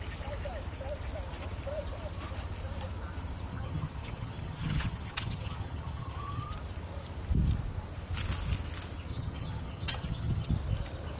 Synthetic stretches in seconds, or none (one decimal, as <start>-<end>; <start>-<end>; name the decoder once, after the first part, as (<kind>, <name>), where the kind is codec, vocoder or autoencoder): 3.5-6.5 (vocoder, HiFi-GAN); 9.1-10.5